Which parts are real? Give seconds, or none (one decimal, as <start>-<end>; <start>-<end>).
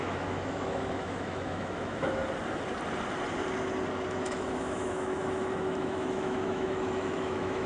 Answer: 2.2-4.1